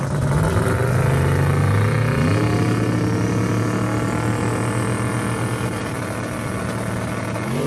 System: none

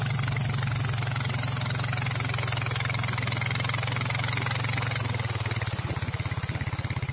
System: none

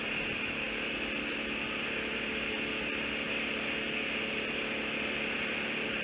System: none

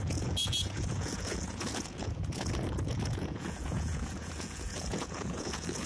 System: vocoder, Vocos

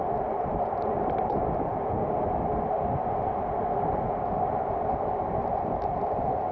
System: none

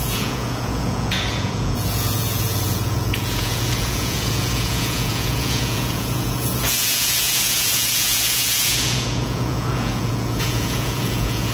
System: vocoder, Vocos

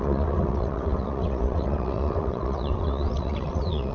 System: vocoder, WaveNeXt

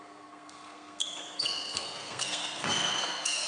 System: codec, SNAC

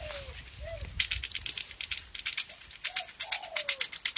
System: none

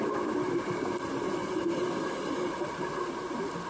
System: vocoder, BigVGAN v2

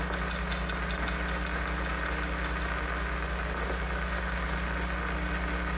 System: none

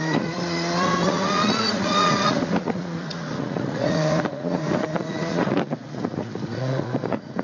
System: vocoder, Vocos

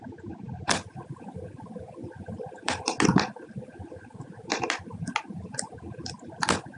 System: none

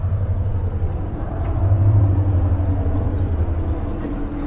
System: vocoder, BigVGAN v2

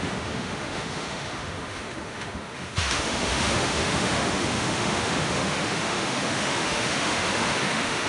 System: autoencoder, DAC-VAE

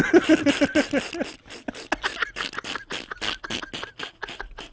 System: none